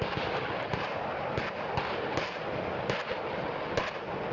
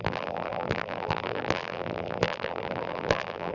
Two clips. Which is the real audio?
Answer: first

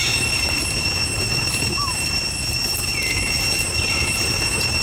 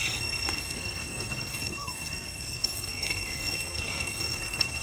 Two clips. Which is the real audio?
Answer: first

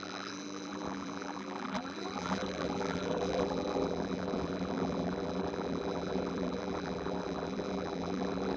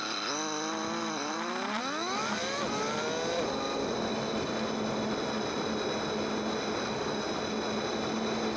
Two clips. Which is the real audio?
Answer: second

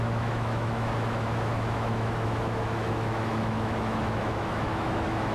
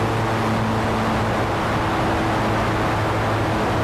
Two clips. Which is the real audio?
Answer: second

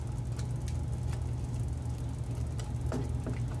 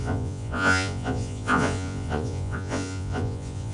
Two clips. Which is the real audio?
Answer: first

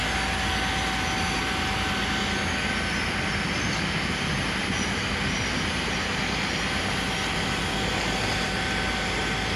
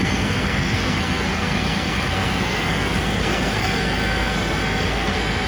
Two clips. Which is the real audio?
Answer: first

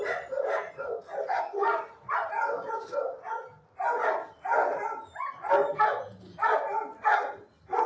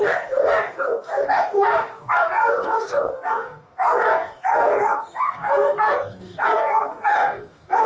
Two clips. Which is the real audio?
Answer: first